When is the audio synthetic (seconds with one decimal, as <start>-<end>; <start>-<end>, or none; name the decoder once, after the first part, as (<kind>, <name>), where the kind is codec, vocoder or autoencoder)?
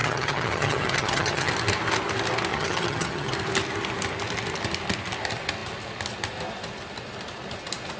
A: 0.0-1.5 (vocoder, HiFi-GAN); 2.5-3.3